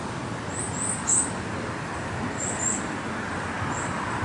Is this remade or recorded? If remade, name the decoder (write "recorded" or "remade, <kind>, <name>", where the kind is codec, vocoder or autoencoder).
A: recorded